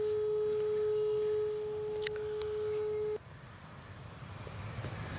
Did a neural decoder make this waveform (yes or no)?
no